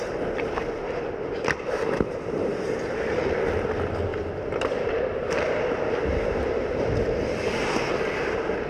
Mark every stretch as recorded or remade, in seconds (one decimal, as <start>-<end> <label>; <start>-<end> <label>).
0.0-8.7 recorded